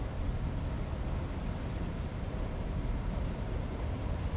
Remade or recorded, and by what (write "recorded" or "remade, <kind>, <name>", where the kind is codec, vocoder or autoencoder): recorded